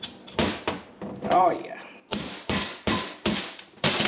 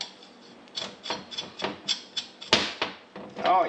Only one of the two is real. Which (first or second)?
second